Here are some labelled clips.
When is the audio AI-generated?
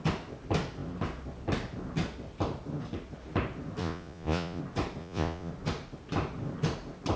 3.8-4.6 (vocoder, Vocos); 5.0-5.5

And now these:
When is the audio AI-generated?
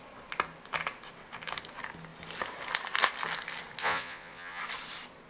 3.8-4.6 (vocoder, Vocos)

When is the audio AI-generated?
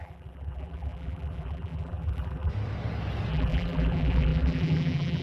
0.0-2.5 (vocoder, BigVGAN v2); 3.3-5.2